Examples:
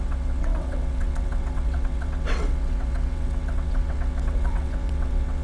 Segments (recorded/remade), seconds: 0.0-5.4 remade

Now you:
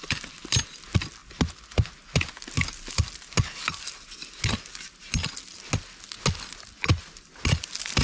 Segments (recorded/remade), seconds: 0.0-8.0 recorded

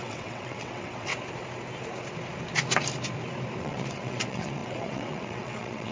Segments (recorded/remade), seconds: 0.0-1.1 remade; 1.1-3.6 recorded; 3.6-5.9 remade

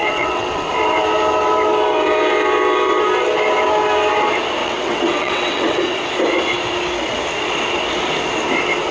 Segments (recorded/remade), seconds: 0.0-0.7 remade; 0.7-4.6 recorded; 4.6-5.8 remade; 5.8-8.9 recorded